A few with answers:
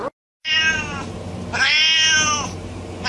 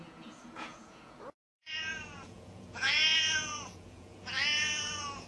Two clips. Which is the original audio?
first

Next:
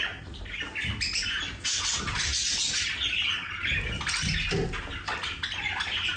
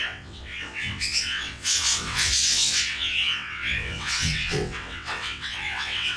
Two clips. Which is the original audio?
first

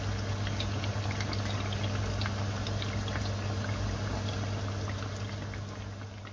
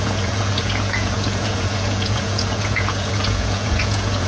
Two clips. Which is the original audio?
first